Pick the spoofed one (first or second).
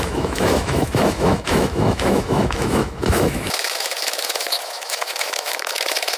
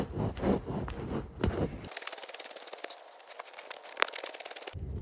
first